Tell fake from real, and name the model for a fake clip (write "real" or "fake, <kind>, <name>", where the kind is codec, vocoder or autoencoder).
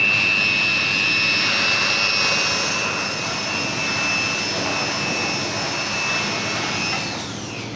real